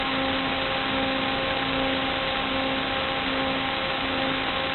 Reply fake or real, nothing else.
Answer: real